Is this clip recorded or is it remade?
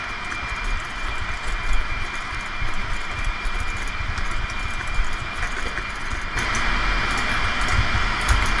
recorded